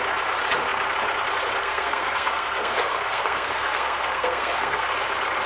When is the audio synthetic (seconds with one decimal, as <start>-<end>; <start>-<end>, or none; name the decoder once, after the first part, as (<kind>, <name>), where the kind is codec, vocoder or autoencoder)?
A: 1.6-4.9 (codec, SNAC)